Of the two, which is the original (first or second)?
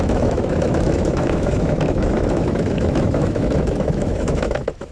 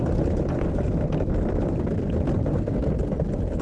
second